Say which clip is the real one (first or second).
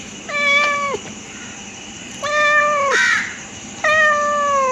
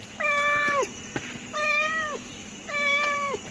first